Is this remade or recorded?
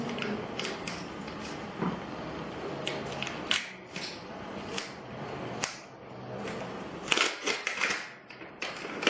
recorded